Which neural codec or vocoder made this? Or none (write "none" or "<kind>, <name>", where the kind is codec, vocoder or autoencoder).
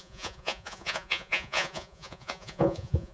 vocoder, Vocos